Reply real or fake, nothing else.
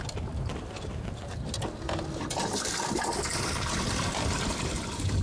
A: real